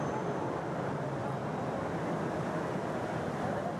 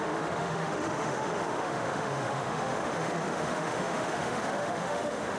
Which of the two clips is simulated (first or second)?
second